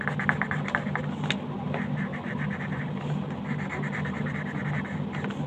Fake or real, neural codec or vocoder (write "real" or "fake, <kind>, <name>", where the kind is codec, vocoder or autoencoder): real